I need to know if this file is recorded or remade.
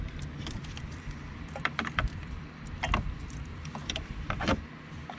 remade